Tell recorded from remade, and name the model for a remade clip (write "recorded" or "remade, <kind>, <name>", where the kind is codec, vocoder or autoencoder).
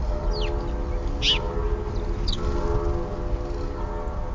recorded